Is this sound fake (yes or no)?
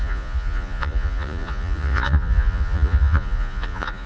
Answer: yes